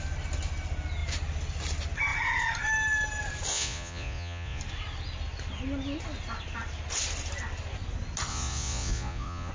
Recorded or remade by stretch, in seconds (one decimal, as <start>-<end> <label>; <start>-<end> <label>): 0.0-3.5 recorded; 3.5-4.6 remade; 4.6-8.3 recorded; 8.3-9.5 remade